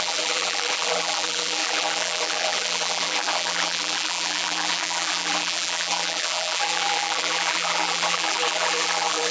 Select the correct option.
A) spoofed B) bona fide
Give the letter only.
A